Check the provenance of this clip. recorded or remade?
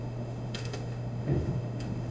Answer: remade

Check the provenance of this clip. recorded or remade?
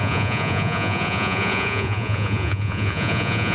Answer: remade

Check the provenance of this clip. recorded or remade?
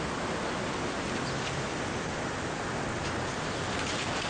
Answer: recorded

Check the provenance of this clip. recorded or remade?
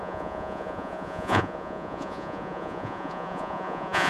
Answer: remade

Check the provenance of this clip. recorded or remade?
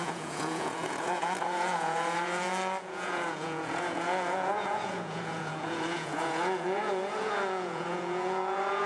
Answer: remade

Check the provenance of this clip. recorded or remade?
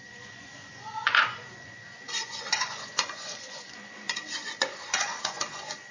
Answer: remade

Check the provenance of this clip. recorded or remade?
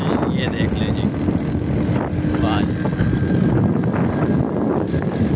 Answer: recorded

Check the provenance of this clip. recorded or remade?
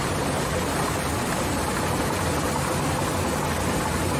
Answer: recorded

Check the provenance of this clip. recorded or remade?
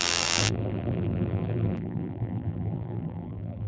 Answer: remade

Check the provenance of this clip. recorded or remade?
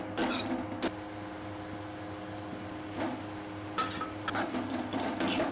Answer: recorded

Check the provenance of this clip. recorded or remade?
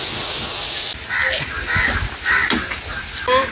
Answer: recorded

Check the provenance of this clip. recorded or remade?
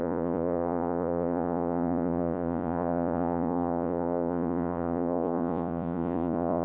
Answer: remade